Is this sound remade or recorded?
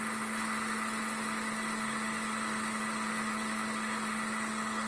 recorded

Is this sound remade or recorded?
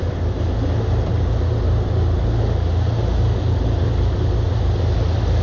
recorded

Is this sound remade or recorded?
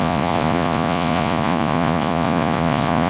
remade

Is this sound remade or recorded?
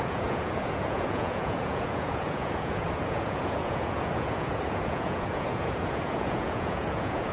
remade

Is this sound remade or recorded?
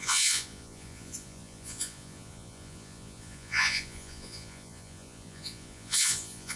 remade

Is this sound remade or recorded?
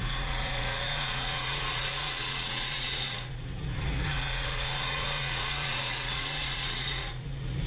remade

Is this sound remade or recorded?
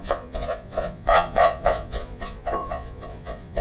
remade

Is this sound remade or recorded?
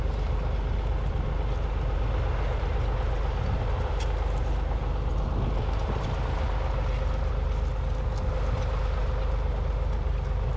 recorded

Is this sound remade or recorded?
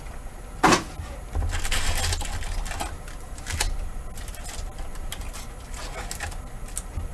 recorded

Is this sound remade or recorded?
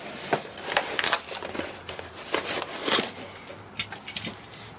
recorded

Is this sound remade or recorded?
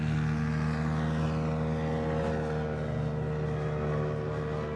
recorded